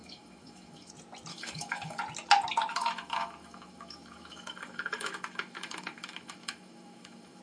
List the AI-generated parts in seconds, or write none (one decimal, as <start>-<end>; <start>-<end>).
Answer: 0.0-0.9; 1.3-2.0; 2.7-7.4